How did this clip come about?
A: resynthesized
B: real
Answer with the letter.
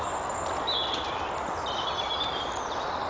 B